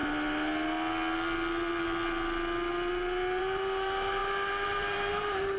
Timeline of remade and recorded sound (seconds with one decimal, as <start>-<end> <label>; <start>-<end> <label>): 0.0-3.4 recorded; 3.4-5.6 remade